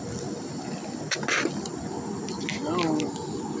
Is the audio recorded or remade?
recorded